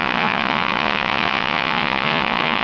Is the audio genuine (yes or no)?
no